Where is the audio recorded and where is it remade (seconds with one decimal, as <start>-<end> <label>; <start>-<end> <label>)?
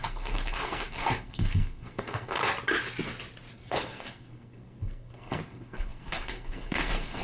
0.0-2.4 remade; 2.4-3.5 recorded; 3.5-7.2 remade